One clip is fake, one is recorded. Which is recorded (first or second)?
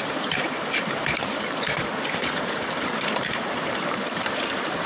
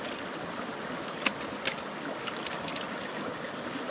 second